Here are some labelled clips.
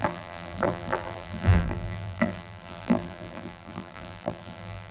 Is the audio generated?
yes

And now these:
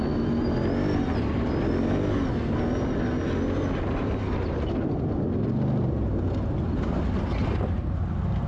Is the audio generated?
no